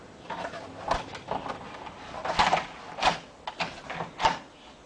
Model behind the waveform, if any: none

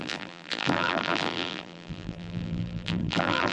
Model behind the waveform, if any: vocoder, BigVGAN v2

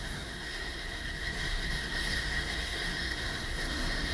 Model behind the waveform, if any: codec, SNAC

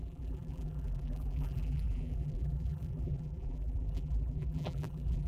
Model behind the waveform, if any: vocoder, BigVGAN v2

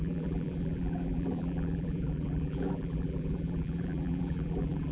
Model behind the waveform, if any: vocoder, BigVGAN v2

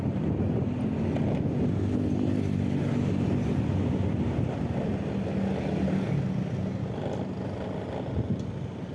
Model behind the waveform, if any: none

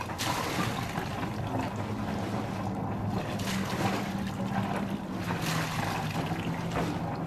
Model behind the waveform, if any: none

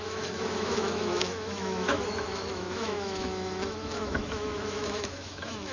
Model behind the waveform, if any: autoencoder, DAC-VAE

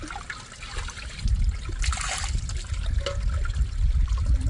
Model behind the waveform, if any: none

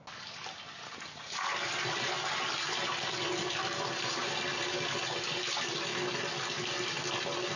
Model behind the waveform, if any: none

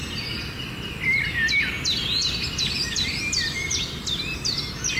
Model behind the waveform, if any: none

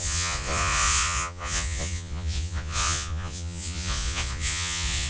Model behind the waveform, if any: vocoder, Vocos